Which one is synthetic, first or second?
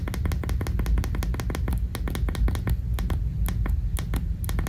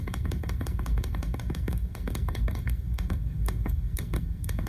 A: second